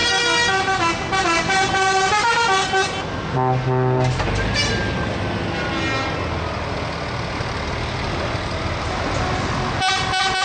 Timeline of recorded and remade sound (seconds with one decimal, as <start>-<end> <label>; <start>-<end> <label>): 0.0-10.4 recorded